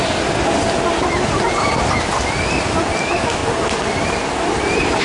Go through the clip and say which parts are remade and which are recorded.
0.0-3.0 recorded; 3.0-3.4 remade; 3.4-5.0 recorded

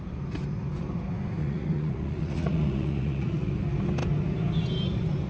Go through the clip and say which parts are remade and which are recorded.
0.0-1.4 recorded; 1.4-3.5 remade; 3.5-5.3 recorded

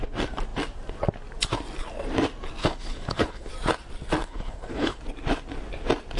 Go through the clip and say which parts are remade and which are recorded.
0.0-2.6 recorded; 2.6-3.5 remade; 3.5-4.2 recorded; 4.2-5.0 remade; 5.0-6.2 recorded

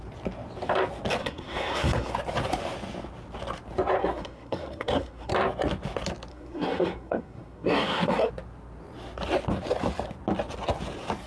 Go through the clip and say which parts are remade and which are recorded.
0.0-1.2 recorded; 1.2-2.1 remade; 2.1-4.0 recorded; 4.0-5.3 remade; 5.3-6.3 recorded; 6.3-8.3 remade; 8.3-11.3 recorded

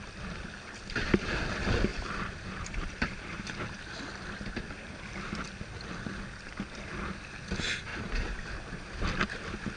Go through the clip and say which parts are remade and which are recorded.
0.0-1.9 recorded; 1.9-3.5 remade; 3.5-7.9 recorded; 7.9-8.5 remade; 8.5-9.8 recorded